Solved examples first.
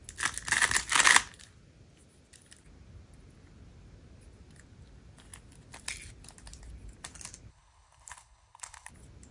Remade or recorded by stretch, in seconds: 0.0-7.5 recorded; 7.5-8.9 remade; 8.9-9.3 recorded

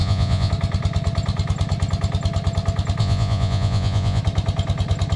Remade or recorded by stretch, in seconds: 0.0-0.5 remade; 0.5-3.0 recorded; 3.0-4.2 remade; 4.2-5.2 recorded

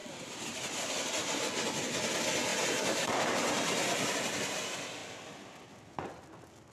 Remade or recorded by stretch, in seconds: 0.0-0.6 remade; 0.6-2.5 recorded; 2.5-4.5 remade; 4.5-6.7 recorded

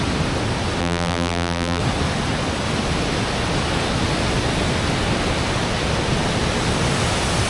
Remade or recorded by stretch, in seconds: 0.0-0.8 recorded; 0.8-1.8 remade; 1.8-7.5 recorded

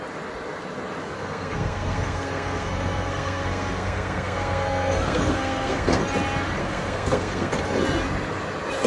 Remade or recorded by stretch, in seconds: 0.0-1.0 recorded; 1.0-6.0 remade; 6.0-6.6 recorded; 6.6-7.6 remade; 7.6-8.9 recorded